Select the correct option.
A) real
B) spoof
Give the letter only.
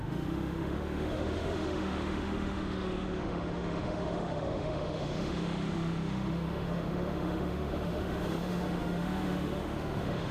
B